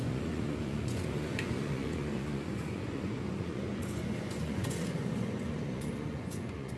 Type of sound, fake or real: fake